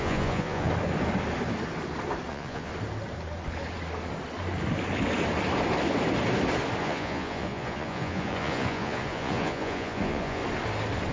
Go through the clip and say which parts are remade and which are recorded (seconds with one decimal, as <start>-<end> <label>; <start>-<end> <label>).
0.0-0.7 remade; 0.7-2.3 recorded; 2.3-2.7 remade; 2.7-6.8 recorded; 6.8-10.4 remade; 10.4-11.1 recorded